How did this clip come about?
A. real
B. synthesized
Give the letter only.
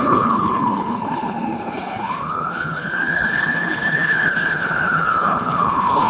B